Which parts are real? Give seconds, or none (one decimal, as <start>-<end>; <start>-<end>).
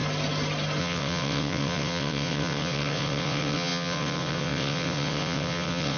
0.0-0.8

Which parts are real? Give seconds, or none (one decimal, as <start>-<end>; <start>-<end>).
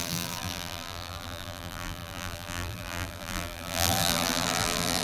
none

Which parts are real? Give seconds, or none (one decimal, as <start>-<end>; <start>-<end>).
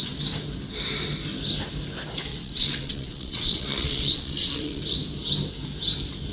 0.0-2.3; 4.8-6.3